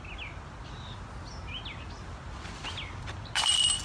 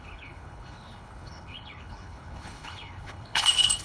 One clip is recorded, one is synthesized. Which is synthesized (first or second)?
second